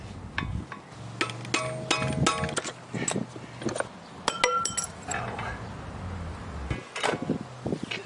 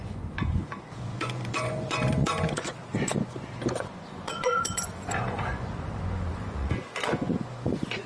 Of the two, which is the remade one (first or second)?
second